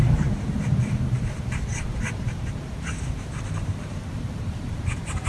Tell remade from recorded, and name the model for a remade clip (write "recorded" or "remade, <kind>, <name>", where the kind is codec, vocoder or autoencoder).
remade, vocoder, BigVGAN v2